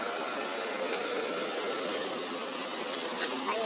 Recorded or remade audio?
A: recorded